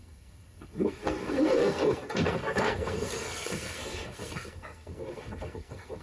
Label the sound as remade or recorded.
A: remade